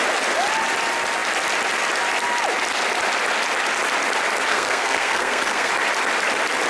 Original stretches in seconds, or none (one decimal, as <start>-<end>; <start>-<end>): 0.0-4.5; 5.7-6.7

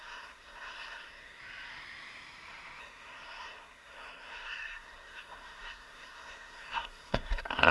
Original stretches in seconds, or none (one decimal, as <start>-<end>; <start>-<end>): 1.4-2.8

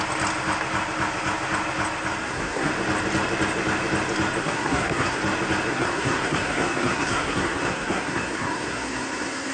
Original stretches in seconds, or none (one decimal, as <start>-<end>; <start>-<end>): 0.0-2.2; 2.7-4.4; 5.2-5.7

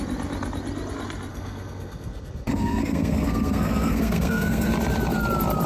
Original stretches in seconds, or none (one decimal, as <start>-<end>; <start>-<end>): 0.0-1.3; 4.7-5.7

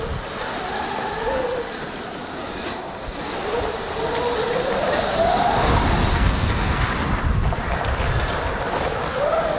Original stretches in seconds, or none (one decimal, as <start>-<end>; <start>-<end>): 0.0-6.1; 6.8-9.6

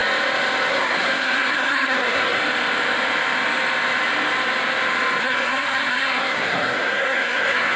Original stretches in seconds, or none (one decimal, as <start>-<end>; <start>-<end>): 0.0-0.7; 2.4-5.2

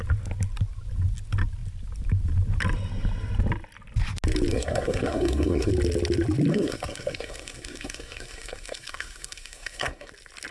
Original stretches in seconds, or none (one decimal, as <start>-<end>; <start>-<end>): 0.0-4.5; 5.7-6.5; 10.1-10.5

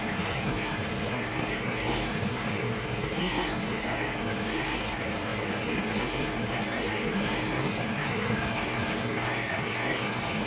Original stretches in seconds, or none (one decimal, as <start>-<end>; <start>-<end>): none